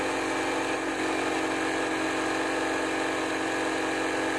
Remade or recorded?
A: recorded